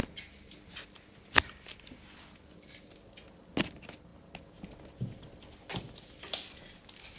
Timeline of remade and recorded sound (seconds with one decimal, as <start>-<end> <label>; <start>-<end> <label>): 0.0-7.2 recorded